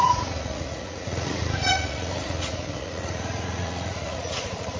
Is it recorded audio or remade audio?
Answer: remade